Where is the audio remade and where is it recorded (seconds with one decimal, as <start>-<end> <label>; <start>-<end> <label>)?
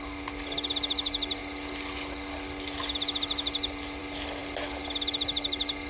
0.0-5.9 recorded